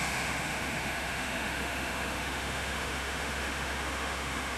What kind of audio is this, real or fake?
fake